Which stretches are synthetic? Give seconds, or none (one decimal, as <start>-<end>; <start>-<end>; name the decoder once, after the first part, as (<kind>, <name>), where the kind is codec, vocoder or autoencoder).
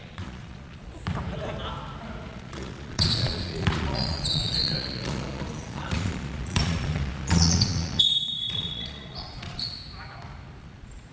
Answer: 0.0-1.0 (vocoder, Vocos); 2.3-9.8; 10.6-11.1